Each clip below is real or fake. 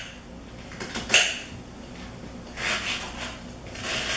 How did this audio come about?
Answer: real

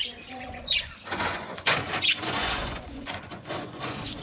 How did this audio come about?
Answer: fake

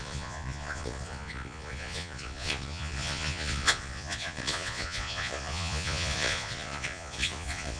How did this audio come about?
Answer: fake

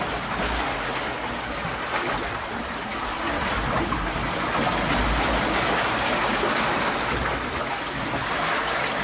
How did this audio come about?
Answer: real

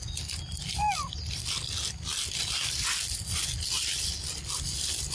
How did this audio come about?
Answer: real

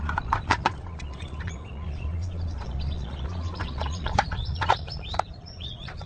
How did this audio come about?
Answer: fake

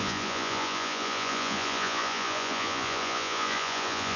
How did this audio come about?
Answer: fake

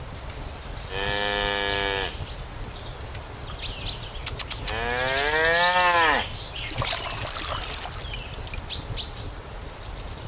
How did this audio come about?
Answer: real